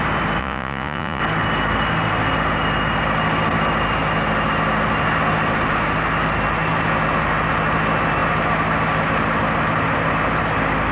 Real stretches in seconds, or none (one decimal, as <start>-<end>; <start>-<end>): 0.0-0.4; 1.2-10.9